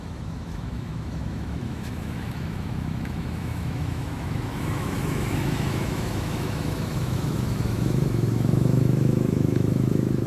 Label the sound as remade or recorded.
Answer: remade